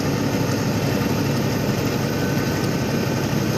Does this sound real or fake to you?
real